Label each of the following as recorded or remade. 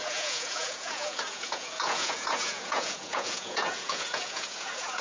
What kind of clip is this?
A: remade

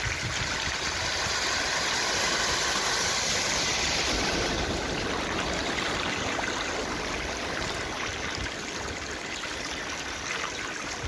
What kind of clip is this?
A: recorded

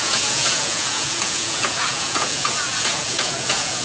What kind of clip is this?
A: remade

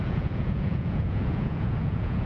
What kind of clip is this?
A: remade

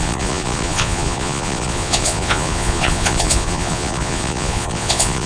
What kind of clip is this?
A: remade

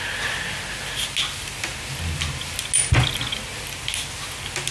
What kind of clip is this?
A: recorded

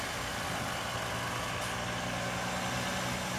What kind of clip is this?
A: recorded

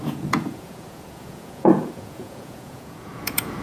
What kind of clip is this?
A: remade